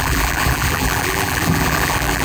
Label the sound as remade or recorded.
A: remade